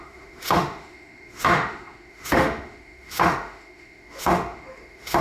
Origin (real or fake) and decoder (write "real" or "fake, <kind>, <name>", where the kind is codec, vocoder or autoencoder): fake, autoencoder, DAC-VAE